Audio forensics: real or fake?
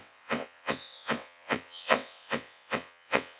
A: fake